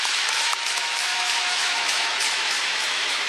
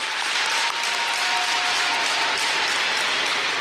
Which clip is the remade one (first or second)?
first